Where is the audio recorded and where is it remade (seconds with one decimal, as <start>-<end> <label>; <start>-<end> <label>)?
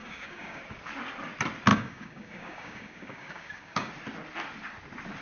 0.0-0.6 remade; 0.6-1.7 recorded; 1.7-3.9 remade; 3.9-5.2 recorded